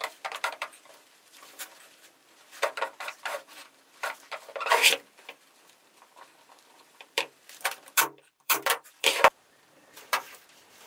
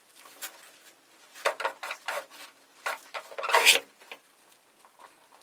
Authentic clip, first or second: second